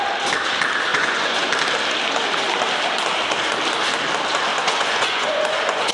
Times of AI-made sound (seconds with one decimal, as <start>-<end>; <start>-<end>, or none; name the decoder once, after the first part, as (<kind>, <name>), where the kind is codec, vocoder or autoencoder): 0.9-1.5 (vocoder, Vocos); 4.5-5.9

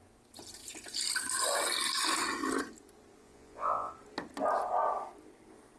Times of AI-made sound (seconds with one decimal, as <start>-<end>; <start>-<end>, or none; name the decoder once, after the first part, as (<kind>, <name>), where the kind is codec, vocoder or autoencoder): 3.2-3.9 (vocoder, Vocos)

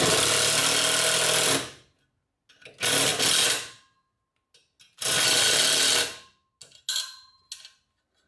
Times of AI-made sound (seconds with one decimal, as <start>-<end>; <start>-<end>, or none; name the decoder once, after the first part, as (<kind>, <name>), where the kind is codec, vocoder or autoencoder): none

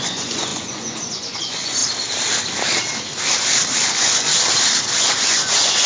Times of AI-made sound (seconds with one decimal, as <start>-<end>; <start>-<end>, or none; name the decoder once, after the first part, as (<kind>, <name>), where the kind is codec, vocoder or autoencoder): 0.0-1.8 (vocoder, Vocos); 3.8-4.3; 5.0-5.9